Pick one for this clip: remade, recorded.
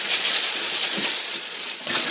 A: remade